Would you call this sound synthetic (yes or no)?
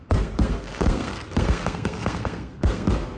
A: yes